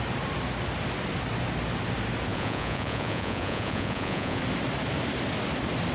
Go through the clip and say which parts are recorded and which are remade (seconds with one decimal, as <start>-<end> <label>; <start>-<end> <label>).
0.0-2.3 recorded; 2.3-4.4 remade; 4.4-5.9 recorded